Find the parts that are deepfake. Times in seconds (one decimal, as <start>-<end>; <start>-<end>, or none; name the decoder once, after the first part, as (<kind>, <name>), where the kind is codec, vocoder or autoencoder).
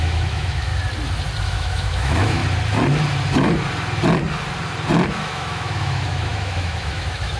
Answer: 0.0-0.7 (autoencoder, DAC-VAE); 1.4-2.4; 5.1-7.4